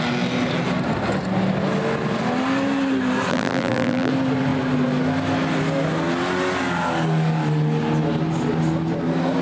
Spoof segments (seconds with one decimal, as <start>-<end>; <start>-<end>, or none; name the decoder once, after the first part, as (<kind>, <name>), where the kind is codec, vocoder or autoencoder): 3.3-4.1 (vocoder, BigVGAN v2)